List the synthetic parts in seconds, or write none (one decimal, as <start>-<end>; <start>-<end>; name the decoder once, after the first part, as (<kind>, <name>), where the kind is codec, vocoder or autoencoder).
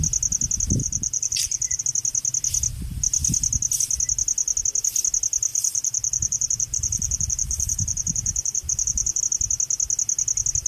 0.8-1.8 (vocoder, BigVGAN v2); 5.5-9.2